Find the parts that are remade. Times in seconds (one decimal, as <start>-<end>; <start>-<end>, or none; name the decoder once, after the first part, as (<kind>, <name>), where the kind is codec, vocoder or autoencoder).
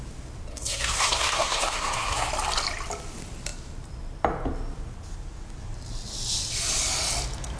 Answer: 0.5-2.3 (codec, SNAC)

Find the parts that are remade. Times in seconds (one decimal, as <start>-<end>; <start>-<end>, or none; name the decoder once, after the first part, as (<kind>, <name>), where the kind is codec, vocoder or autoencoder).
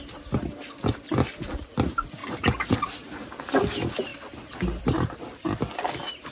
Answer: none